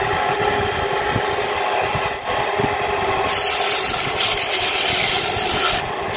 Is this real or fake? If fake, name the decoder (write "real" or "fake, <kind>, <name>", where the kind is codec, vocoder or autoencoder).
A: real